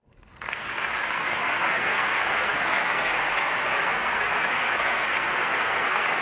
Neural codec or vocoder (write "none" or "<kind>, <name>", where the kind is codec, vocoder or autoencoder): codec, SNAC